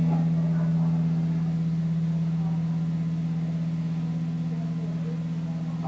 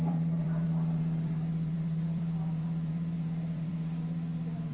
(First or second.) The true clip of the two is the first